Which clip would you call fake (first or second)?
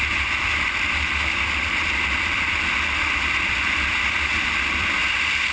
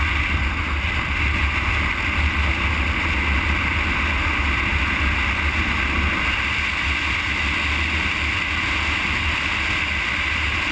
first